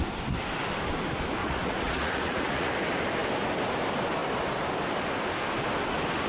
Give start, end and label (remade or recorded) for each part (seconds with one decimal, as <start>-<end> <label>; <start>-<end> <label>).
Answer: 0.0-1.4 recorded; 1.4-2.7 remade; 2.7-6.3 recorded